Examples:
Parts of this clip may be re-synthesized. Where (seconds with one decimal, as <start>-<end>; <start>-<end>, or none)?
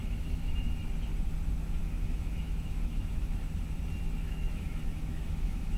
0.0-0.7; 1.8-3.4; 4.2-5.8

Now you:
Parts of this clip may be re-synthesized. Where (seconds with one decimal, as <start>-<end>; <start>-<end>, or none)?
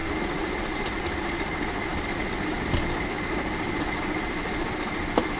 0.0-1.0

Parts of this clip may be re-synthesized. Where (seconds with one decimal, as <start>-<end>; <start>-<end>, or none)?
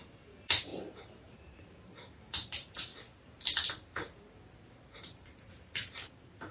0.0-2.9; 4.6-6.5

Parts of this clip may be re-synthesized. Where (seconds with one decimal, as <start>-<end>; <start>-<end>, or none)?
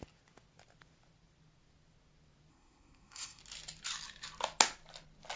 2.5-3.4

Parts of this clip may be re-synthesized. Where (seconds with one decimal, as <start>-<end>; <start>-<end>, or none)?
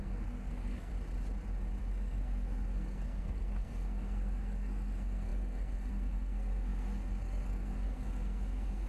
0.0-0.9; 1.8-8.9